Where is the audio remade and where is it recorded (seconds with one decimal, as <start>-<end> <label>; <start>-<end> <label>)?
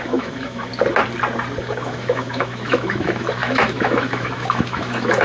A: 0.0-0.7 remade; 0.7-1.6 recorded; 1.6-5.2 remade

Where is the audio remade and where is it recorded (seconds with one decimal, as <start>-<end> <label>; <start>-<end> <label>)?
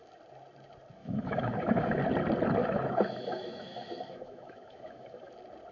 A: 0.0-1.0 recorded; 1.0-2.0 remade; 2.0-2.6 recorded; 2.6-5.3 remade; 5.3-5.7 recorded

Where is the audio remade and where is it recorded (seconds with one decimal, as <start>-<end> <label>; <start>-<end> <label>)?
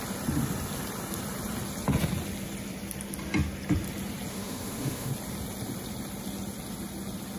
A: 0.0-4.3 recorded; 4.3-5.1 remade; 5.1-7.4 recorded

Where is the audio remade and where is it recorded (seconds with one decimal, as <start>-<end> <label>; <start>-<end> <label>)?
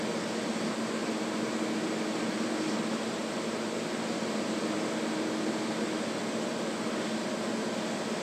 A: 0.0-8.2 recorded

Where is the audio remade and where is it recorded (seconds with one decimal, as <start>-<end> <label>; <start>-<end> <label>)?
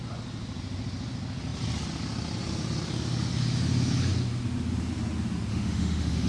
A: 0.0-5.5 recorded; 5.5-6.3 remade